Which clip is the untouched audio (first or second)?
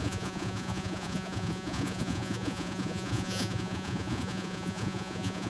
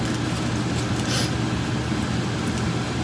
second